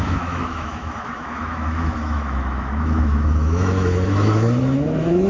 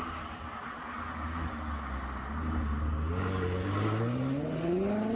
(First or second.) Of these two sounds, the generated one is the first